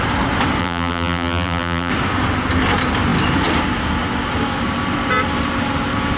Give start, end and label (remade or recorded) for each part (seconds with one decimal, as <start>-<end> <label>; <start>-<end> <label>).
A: 0.0-0.6 recorded; 0.6-1.9 remade; 1.9-6.2 recorded